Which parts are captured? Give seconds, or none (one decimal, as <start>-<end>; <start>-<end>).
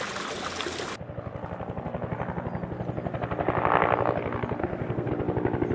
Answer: 0.0-4.6; 5.1-5.7